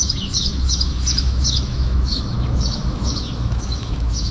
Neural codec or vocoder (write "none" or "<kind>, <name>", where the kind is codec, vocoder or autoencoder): autoencoder, DAC-VAE